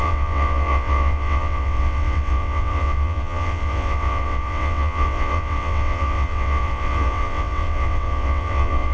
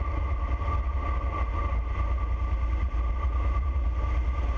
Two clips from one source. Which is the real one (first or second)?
second